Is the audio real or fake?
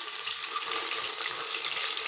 real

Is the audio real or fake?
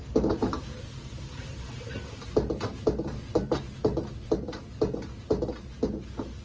real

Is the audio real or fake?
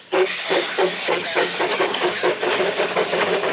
fake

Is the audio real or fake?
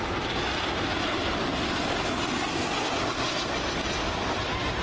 real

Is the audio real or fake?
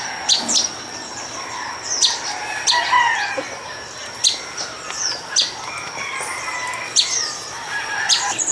real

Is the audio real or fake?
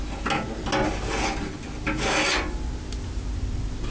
real